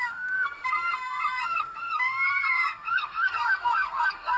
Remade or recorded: remade